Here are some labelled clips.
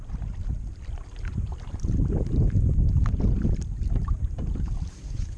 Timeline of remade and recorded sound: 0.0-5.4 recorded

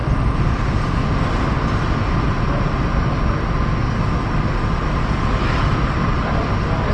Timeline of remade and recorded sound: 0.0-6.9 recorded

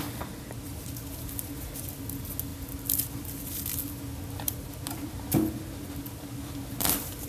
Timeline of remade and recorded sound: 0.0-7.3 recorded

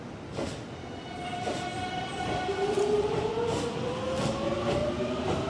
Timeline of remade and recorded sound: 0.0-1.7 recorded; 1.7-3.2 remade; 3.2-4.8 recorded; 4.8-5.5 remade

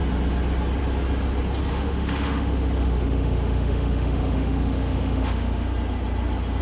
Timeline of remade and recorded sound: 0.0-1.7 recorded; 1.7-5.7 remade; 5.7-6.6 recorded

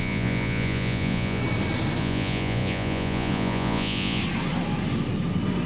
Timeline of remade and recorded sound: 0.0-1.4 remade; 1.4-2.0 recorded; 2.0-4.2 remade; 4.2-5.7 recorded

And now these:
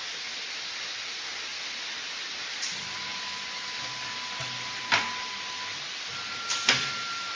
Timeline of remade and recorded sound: 0.0-7.4 recorded

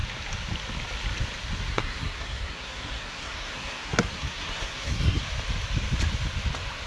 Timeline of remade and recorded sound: 0.0-1.7 recorded; 1.7-5.2 remade; 5.2-6.9 recorded